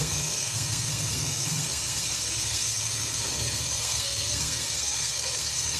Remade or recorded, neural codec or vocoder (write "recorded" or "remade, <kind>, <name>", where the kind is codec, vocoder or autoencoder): remade, codec, SNAC